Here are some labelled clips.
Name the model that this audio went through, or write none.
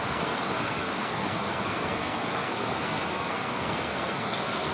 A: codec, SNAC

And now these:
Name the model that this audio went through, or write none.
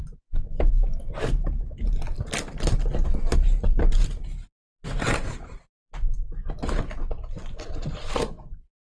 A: none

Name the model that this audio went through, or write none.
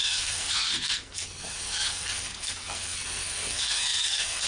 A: codec, SNAC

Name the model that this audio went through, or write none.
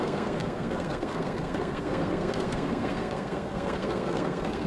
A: codec, SNAC